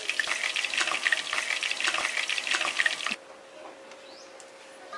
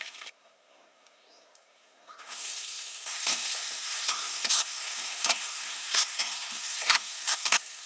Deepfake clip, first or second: second